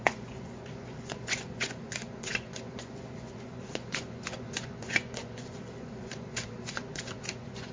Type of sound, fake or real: fake